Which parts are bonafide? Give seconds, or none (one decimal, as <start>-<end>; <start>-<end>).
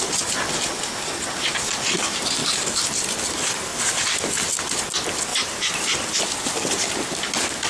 0.0-3.7; 4.6-5.3; 6.9-7.7